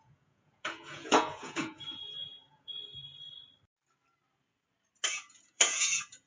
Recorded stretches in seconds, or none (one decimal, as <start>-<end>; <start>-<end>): 2.9-5.1